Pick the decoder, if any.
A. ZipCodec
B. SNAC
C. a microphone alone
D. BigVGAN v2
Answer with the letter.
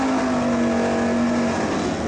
C